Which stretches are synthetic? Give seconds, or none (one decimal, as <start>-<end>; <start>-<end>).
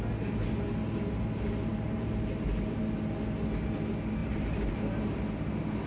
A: 1.7-2.8; 4.2-4.7